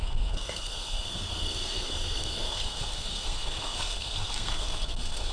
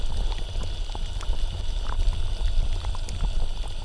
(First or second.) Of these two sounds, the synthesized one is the first